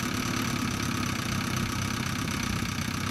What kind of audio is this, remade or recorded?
recorded